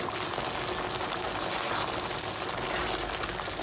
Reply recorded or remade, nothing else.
recorded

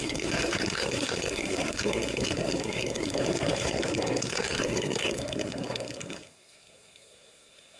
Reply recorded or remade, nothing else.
remade